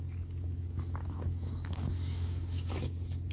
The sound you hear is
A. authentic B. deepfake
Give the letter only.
B